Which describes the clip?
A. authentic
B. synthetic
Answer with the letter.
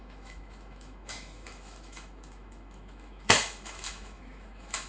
B